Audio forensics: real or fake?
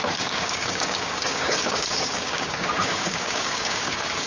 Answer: fake